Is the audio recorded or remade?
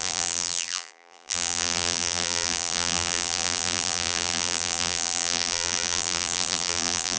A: remade